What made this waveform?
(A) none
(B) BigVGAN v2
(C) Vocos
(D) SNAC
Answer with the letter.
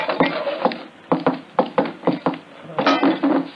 A